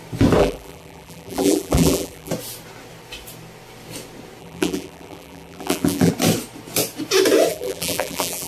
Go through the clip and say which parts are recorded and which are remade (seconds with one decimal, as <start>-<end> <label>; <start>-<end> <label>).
0.0-0.4 recorded; 0.4-2.3 remade; 2.3-4.4 recorded; 4.4-6.1 remade; 6.1-7.5 recorded; 7.5-8.5 remade